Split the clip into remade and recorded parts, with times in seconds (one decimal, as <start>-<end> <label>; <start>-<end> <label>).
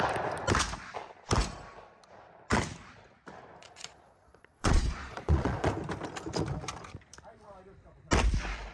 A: 0.0-3.6 recorded; 3.6-5.7 remade; 5.7-8.7 recorded